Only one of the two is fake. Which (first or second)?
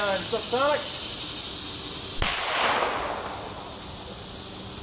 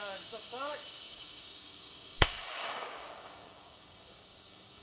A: second